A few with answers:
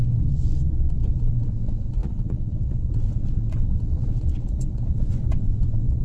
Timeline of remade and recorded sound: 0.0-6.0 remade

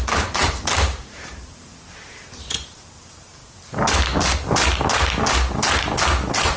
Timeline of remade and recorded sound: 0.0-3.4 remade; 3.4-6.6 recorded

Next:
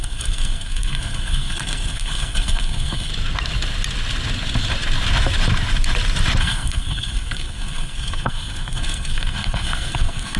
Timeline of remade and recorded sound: 0.0-3.1 remade; 3.1-6.4 recorded; 6.4-10.4 remade